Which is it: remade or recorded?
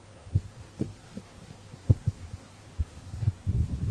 remade